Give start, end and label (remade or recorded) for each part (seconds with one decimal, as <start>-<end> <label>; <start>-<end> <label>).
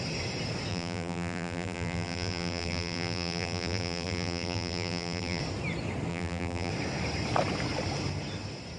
0.0-0.7 recorded; 0.7-5.4 remade; 5.4-6.1 recorded; 6.1-6.7 remade; 6.7-8.8 recorded